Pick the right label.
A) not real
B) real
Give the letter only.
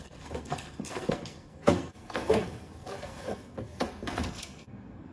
A